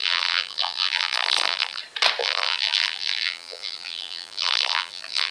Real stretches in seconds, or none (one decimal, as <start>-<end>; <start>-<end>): 1.8-2.2